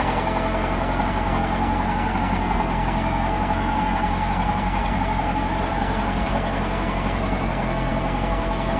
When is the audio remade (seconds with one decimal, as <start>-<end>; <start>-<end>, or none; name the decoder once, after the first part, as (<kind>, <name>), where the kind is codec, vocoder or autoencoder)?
0.0-8.8 (codec, SNAC)